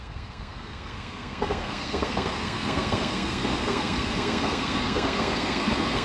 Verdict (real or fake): fake